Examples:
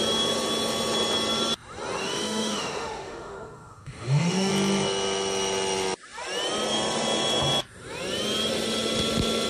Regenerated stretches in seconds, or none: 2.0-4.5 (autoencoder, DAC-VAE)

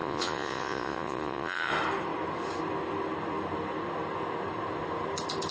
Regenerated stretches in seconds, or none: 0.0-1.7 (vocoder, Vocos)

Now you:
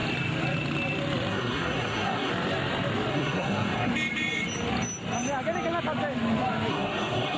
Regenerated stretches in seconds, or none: 1.3-2.3 (codec, SNAC); 3.1-3.9; 6.7-7.4

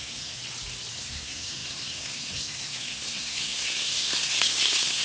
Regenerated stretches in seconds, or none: 0.0-0.4 (codec, SNAC); 0.9-5.0